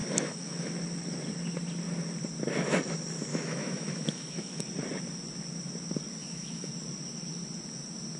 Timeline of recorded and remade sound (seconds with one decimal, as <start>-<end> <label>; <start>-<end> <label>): 0.0-0.7 remade; 0.7-3.3 recorded; 3.3-4.6 remade; 4.6-6.2 recorded; 6.2-6.7 remade; 6.7-8.2 recorded